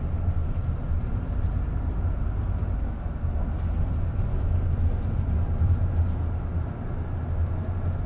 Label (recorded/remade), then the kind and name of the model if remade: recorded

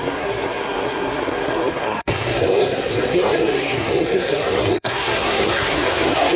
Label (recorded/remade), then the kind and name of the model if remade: remade, codec, SNAC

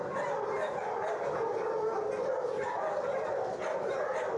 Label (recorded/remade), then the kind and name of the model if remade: recorded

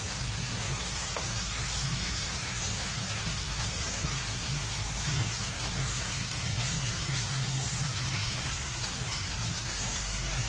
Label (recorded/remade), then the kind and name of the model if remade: remade, codec, SNAC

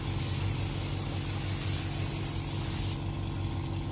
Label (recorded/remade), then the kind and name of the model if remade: recorded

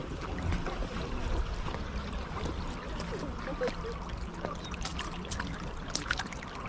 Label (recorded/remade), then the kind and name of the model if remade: recorded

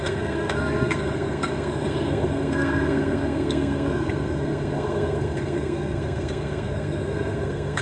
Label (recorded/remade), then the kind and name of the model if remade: remade, codec, SNAC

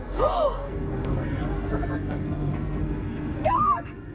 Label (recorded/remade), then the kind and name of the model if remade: remade, codec, SNAC